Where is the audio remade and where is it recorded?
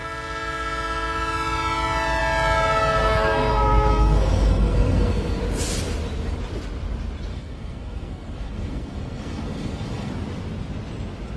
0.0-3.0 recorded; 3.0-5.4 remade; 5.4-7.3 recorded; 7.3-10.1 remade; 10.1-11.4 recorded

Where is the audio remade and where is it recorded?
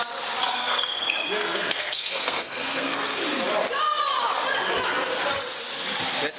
0.0-0.4 recorded; 0.4-3.2 remade; 3.2-6.4 recorded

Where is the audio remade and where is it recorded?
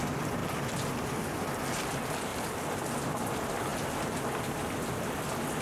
0.0-5.6 recorded